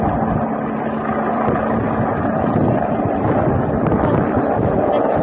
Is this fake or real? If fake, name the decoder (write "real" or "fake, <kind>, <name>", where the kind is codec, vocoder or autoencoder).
real